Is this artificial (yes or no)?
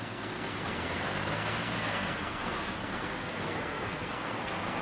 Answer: yes